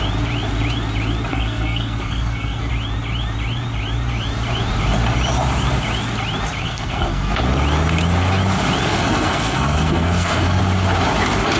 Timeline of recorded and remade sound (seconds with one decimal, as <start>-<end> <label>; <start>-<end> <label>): 0.0-1.3 recorded; 1.3-2.7 remade; 2.7-6.6 recorded; 6.6-7.4 remade; 7.4-8.9 recorded; 8.9-10.6 remade; 10.6-11.6 recorded

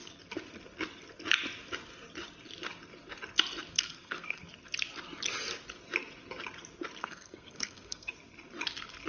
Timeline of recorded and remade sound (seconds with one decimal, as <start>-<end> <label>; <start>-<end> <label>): 0.0-3.7 recorded; 3.7-4.4 remade; 4.4-7.0 recorded; 7.0-8.1 remade; 8.1-9.1 recorded

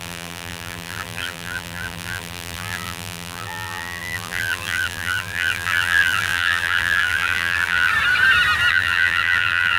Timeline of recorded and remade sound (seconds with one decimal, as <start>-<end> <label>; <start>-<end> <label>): 0.0-7.9 remade; 7.9-8.7 recorded; 8.7-9.8 remade

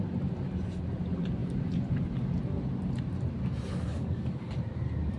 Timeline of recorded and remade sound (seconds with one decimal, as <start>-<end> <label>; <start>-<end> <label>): 0.0-3.9 recorded; 3.9-4.4 remade; 4.4-5.2 recorded

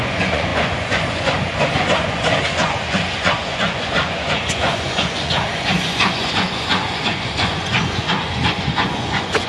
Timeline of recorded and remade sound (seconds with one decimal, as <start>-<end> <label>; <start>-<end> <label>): 0.0-9.5 remade

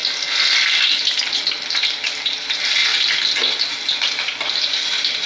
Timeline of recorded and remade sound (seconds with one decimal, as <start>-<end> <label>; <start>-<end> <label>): 0.0-0.8 recorded; 0.8-2.8 remade; 2.8-3.7 recorded; 3.7-5.3 remade